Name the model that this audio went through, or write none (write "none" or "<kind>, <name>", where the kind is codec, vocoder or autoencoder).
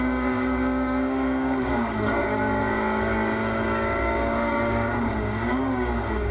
codec, DAC